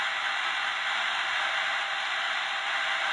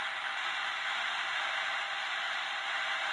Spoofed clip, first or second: second